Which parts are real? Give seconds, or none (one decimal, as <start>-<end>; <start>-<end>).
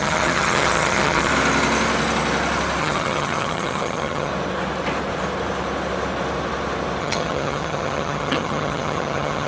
1.3-2.8; 4.3-7.0